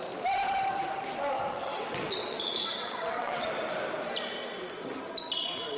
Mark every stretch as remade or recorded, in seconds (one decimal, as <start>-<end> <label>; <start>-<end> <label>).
0.0-1.5 recorded; 1.5-3.5 remade; 3.5-5.8 recorded